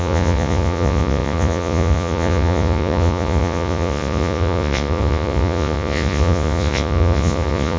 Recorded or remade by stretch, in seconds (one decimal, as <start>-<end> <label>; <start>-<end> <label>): 0.0-7.8 remade